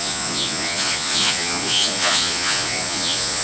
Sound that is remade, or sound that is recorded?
remade